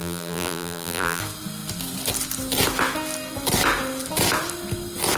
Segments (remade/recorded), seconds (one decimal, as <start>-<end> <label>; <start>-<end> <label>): 0.0-1.2 remade; 1.2-5.2 recorded